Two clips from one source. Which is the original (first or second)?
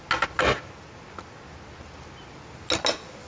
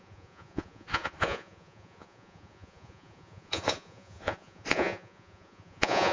first